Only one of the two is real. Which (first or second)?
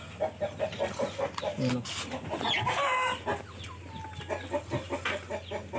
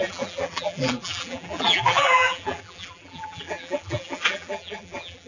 first